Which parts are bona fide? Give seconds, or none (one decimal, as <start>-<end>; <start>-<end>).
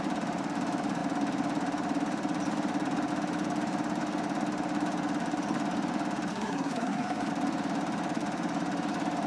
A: 0.0-6.3; 7.3-9.3